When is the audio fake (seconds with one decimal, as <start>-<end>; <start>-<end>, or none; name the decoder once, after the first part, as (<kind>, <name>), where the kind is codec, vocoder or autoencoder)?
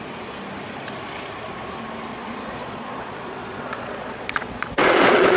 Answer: 2.1-5.4 (vocoder, Vocos)